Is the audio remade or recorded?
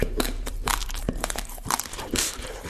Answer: remade